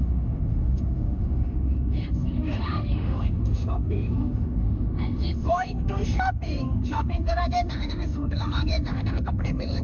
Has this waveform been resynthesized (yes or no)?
yes